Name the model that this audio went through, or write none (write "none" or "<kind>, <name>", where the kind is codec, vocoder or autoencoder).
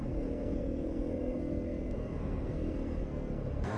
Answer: codec, SNAC